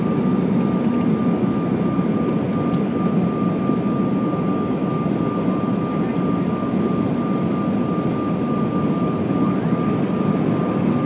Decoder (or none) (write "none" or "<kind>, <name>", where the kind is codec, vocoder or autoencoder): none